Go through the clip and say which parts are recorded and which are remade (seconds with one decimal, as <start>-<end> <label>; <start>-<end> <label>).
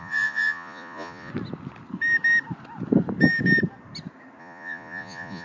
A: 0.0-1.3 remade; 1.3-4.4 recorded; 4.4-5.4 remade